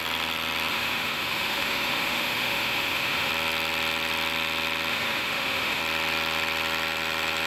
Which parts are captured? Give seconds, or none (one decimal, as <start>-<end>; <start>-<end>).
0.0-0.7; 3.3-4.9; 5.8-7.5